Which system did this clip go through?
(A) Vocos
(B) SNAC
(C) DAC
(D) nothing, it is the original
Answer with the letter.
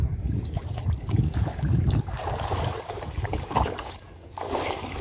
C